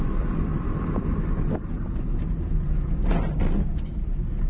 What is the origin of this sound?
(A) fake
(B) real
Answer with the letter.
B